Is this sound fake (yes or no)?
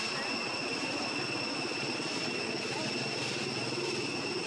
no